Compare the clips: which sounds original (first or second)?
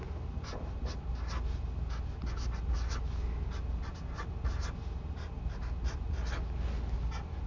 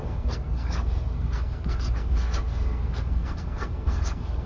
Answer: first